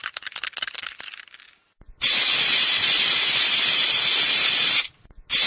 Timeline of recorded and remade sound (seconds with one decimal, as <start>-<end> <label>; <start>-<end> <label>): 0.0-5.5 recorded